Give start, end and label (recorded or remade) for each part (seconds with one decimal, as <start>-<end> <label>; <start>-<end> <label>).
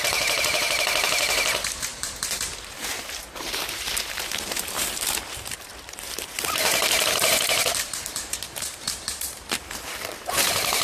0.0-10.8 remade